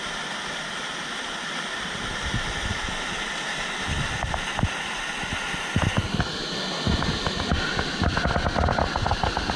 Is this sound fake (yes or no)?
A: no